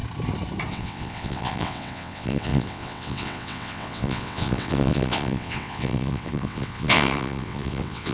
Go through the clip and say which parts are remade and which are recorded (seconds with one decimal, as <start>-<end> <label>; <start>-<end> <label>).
0.0-0.7 recorded; 0.7-8.1 remade